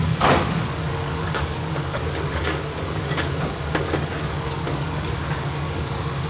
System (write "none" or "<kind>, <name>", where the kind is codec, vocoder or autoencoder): codec, DAC